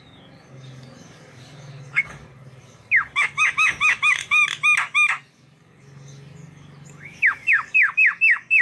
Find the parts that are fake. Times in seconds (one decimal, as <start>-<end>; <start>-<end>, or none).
0.0-4.4; 5.3-8.6